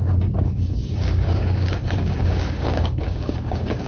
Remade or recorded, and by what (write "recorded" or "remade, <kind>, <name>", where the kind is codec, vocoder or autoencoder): remade, codec, DAC